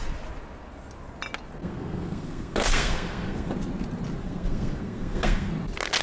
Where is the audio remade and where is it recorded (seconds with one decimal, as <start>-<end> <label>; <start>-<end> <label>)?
0.0-1.6 recorded; 1.6-3.5 remade; 3.5-4.2 recorded; 4.2-5.5 remade; 5.5-6.0 recorded